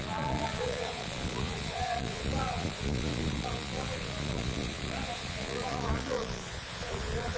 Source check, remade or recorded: remade